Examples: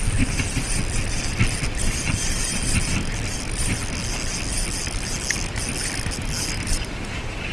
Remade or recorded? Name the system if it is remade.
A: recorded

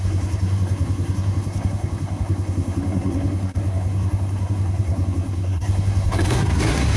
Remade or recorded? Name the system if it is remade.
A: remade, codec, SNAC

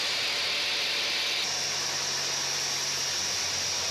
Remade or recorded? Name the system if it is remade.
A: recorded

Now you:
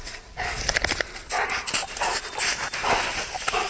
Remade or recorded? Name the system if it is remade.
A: recorded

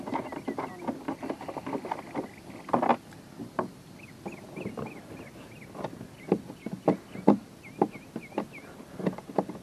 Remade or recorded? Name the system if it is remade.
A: recorded